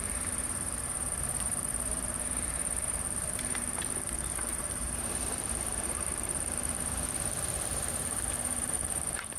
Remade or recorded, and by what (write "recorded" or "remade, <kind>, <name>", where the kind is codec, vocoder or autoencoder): remade, vocoder, BigVGAN v2